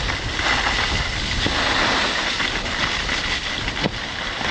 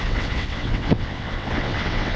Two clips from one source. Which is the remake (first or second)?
second